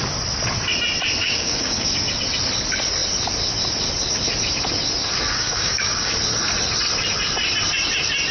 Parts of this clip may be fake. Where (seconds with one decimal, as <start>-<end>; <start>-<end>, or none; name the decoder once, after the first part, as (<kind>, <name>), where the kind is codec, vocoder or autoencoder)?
1.2-1.9 (codec, DAC); 5.3-6.1